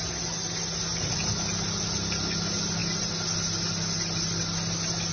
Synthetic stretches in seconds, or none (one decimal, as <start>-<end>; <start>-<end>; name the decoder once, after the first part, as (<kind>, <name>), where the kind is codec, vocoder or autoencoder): none